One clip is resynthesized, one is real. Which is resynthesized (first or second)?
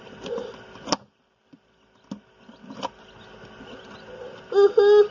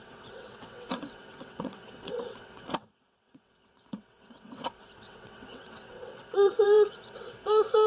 second